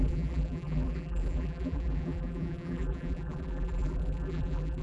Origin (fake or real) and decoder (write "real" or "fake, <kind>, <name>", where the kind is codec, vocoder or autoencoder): fake, vocoder, BigVGAN v2